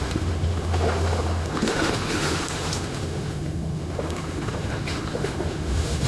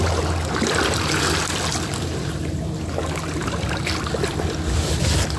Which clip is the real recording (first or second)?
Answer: second